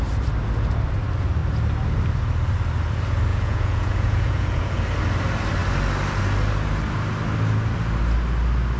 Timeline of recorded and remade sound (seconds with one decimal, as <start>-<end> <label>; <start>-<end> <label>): 0.0-3.3 recorded; 3.3-4.8 remade; 4.8-8.8 recorded